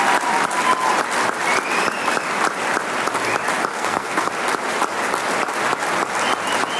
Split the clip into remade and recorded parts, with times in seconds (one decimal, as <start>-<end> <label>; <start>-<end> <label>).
0.0-3.7 recorded; 3.7-4.3 remade; 4.3-6.8 recorded